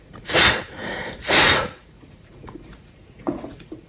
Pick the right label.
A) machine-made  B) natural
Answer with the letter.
A